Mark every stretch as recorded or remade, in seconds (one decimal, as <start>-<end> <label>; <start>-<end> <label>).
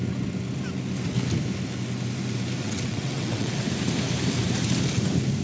0.0-2.6 recorded; 2.6-3.7 remade; 3.7-5.4 recorded